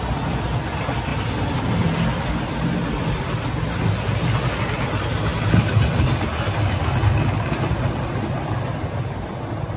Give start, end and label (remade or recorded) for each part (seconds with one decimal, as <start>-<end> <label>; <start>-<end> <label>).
0.0-9.8 recorded